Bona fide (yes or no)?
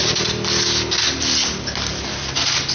yes